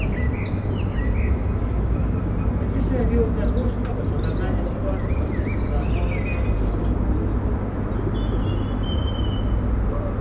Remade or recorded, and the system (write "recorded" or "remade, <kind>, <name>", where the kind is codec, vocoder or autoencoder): recorded